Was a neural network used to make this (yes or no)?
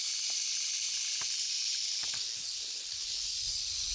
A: no